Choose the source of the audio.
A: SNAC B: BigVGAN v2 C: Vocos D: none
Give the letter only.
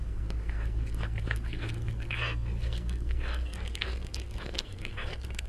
A